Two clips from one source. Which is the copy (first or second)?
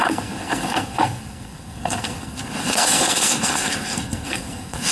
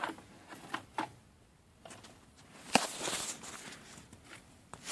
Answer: first